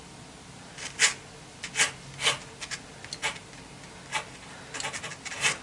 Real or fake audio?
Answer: real